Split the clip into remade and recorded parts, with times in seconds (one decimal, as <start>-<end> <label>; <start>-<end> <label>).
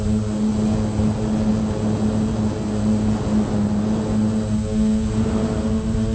0.0-6.1 recorded